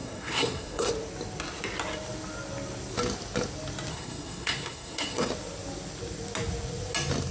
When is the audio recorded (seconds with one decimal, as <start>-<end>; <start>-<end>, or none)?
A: 0.9-3.9; 5.3-7.3

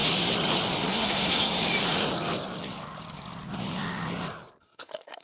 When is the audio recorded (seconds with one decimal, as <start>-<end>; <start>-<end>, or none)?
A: 0.0-0.9; 1.5-4.6

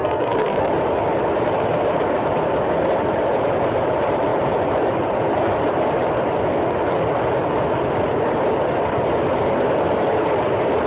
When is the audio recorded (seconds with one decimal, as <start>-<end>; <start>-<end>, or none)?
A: 0.7-10.9

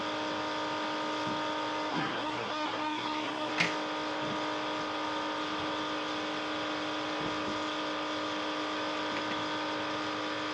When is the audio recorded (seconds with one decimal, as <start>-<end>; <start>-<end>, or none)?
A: 0.0-1.9; 3.5-10.5

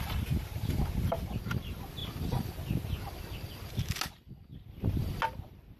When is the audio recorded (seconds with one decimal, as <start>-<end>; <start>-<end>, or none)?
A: 0.0-5.8

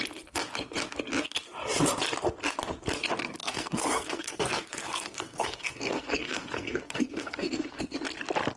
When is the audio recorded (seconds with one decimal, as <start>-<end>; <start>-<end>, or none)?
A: 0.0-3.4; 7.8-8.6